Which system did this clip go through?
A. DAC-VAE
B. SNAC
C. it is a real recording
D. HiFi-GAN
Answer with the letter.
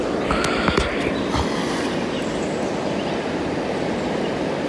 C